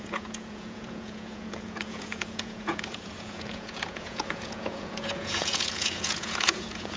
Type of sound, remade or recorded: remade